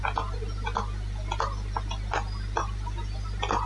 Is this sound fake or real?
real